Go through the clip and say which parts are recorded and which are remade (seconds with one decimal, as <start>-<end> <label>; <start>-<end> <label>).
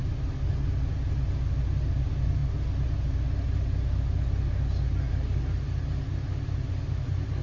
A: 0.0-7.4 recorded